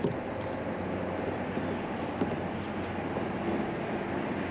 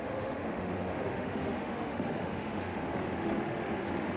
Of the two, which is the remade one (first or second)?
second